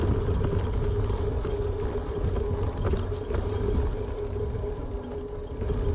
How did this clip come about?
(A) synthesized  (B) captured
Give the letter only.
B